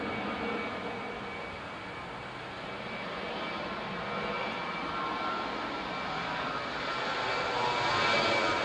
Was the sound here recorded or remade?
recorded